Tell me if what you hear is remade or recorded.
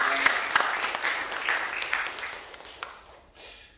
recorded